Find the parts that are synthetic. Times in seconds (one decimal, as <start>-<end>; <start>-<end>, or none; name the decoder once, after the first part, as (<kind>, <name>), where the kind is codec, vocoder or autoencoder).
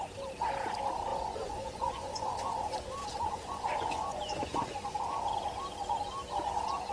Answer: 1.1-2.6 (vocoder, Vocos); 3.0-5.2